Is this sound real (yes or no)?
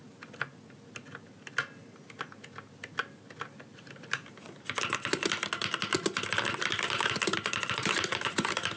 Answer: yes